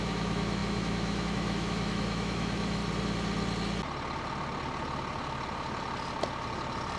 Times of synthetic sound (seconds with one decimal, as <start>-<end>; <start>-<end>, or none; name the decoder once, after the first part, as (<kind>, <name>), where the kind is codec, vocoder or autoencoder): 0.0-2.8 (autoencoder, DAC-VAE)